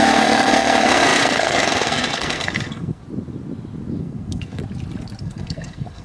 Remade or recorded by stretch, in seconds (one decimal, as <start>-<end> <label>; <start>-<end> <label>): 0.0-3.0 remade; 3.0-4.0 recorded; 4.0-4.6 remade; 4.6-5.2 recorded; 5.2-6.0 remade